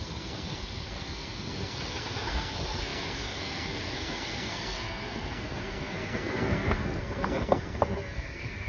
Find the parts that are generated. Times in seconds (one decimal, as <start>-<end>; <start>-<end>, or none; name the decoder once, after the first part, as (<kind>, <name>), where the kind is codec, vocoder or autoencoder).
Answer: 0.0-8.7 (codec, SNAC)